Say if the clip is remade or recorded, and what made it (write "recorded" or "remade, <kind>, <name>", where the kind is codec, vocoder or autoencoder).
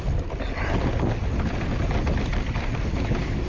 recorded